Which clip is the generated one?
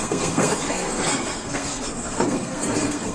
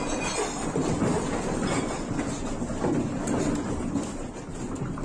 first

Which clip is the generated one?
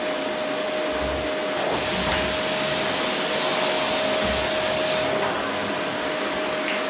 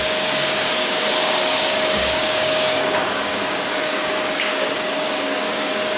second